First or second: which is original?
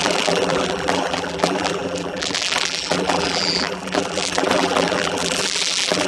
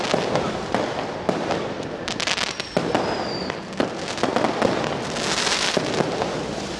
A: second